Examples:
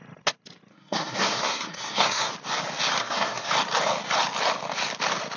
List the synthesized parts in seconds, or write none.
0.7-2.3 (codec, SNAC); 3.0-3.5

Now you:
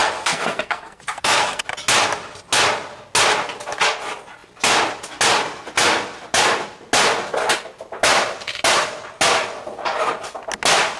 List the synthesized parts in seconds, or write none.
0.0-1.6 (codec, SNAC)

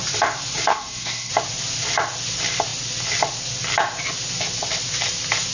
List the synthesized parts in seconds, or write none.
0.7-1.3 (codec, SNAC)

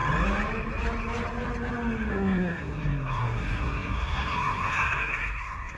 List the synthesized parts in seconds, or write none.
2.1-5.8 (codec, SNAC)

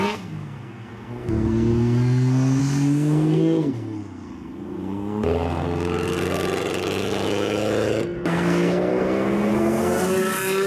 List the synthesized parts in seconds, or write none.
0.0-10.7 (codec, SNAC)

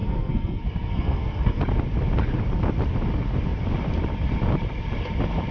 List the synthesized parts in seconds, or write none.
0.0-1.6 (codec, SNAC)

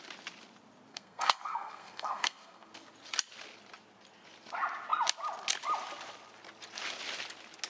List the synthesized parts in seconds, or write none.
0.9-2.7 (codec, SNAC)

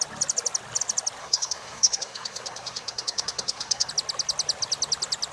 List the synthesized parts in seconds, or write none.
1.2-3.9 (codec, SNAC)